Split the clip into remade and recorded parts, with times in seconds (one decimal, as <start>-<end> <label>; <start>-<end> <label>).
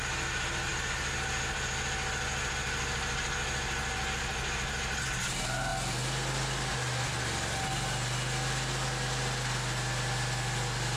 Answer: 0.0-11.0 recorded